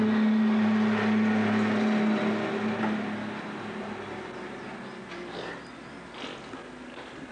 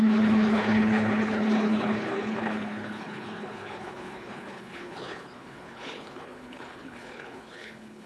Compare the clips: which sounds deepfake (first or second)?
second